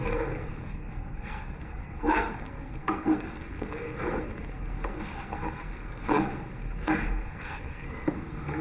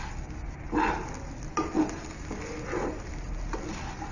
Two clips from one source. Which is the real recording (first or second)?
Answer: second